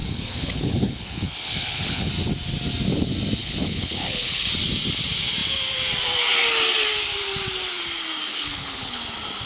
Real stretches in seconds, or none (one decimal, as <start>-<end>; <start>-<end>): 2.1-3.4; 4.5-8.3; 9.0-9.5